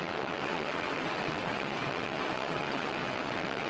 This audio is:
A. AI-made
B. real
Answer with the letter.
A